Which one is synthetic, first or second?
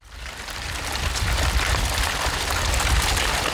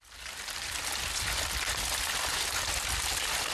first